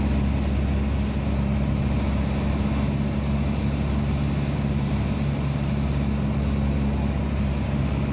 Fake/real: real